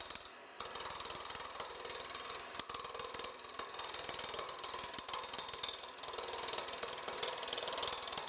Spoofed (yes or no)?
no